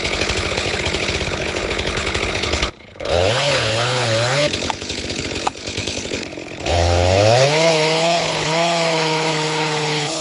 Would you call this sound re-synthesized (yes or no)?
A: yes